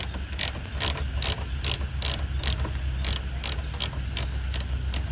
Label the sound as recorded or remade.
recorded